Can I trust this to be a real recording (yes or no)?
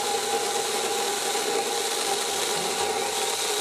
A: yes